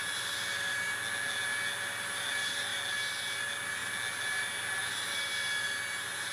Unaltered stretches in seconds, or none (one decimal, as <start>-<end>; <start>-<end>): 0.0-6.3